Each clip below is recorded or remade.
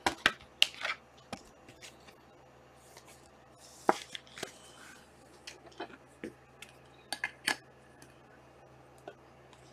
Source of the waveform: recorded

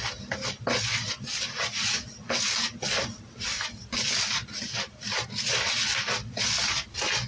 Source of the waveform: recorded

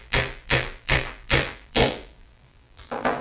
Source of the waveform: remade